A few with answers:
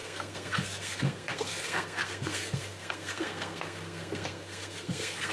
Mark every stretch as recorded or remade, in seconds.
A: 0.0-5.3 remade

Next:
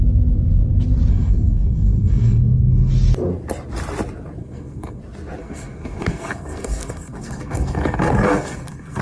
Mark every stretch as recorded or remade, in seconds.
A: 0.0-1.1 recorded; 1.1-2.9 remade; 2.9-4.4 recorded; 4.4-5.0 remade; 5.0-5.4 recorded; 5.4-9.0 remade

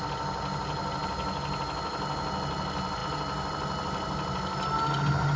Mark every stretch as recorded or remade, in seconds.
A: 0.0-5.4 recorded